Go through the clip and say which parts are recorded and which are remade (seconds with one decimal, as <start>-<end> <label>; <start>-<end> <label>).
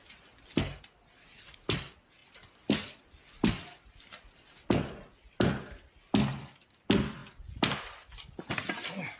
0.0-9.2 recorded